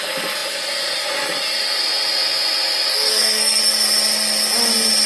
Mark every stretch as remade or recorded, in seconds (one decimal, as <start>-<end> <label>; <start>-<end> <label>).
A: 0.0-2.9 recorded; 2.9-3.6 remade; 3.6-5.1 recorded